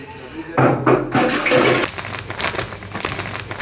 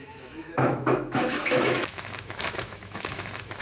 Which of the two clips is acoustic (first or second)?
first